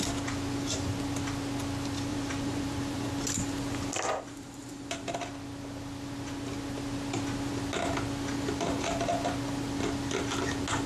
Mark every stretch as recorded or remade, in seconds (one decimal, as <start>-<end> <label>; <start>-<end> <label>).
0.0-2.1 recorded; 2.1-3.1 remade; 3.1-10.9 recorded